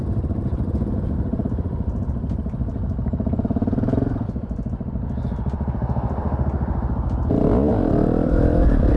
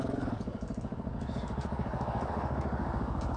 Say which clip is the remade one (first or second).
second